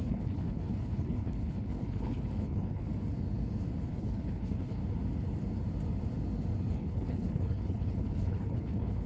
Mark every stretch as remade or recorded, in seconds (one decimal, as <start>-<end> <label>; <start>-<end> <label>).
0.0-2.9 remade; 2.9-3.9 recorded; 3.9-4.8 remade; 4.8-6.7 recorded; 6.7-9.1 remade